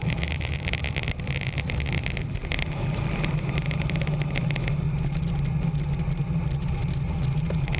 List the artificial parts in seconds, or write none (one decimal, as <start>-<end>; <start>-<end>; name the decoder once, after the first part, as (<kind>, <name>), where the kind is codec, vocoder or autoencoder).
0.0-0.8 (vocoder, BigVGAN v2); 6.8-7.8